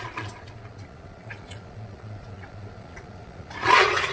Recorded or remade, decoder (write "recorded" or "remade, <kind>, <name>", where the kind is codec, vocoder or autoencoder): remade, vocoder, Vocos